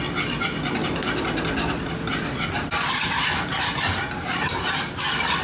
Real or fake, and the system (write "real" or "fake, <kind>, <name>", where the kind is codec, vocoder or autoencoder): real